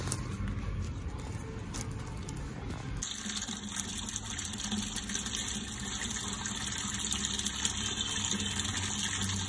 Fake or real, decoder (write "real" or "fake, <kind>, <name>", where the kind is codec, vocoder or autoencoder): real